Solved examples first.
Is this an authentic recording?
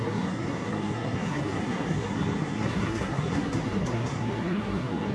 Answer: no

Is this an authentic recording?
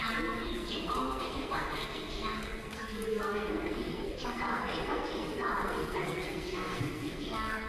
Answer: no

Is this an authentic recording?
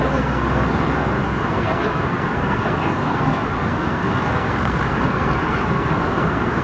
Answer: no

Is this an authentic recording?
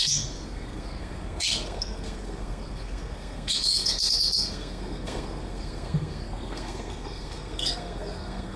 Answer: no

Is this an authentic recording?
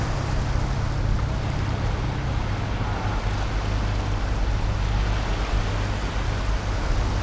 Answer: yes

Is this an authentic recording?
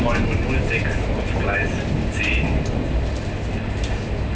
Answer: yes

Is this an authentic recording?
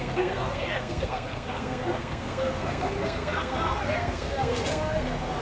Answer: no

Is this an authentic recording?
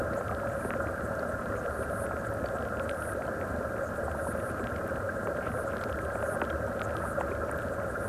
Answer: yes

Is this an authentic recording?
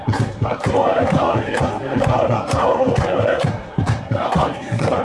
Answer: no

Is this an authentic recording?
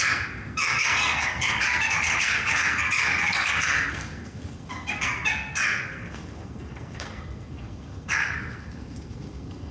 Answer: no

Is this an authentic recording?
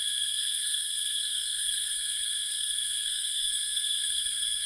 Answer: no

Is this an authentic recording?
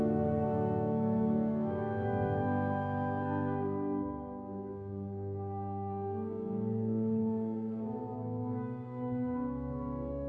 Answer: no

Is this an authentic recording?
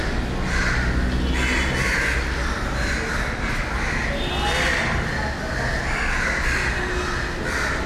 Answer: yes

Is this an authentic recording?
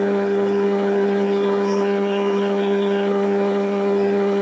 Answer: no